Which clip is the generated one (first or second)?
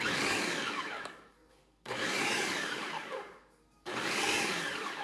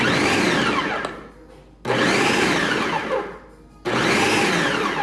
first